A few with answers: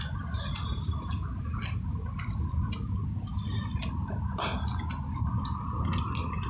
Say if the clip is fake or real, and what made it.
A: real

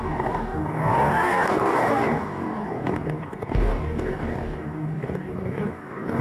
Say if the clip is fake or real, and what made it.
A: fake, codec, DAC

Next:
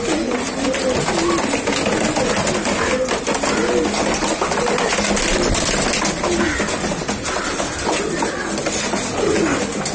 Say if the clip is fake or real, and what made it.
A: real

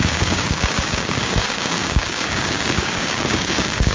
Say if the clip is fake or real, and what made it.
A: fake, codec, DAC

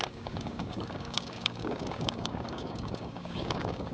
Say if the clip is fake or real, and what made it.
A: fake, codec, DAC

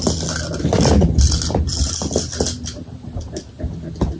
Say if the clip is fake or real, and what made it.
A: real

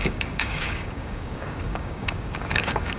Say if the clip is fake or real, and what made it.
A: fake, codec, DAC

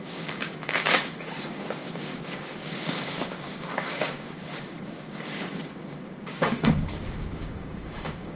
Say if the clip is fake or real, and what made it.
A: fake, codec, DAC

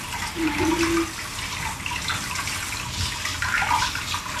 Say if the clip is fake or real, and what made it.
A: real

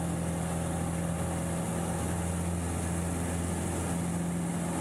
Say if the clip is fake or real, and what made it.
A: real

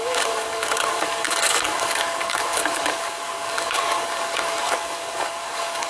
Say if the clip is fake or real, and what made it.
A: fake, codec, DAC